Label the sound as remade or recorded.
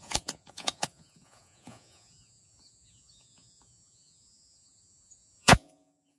remade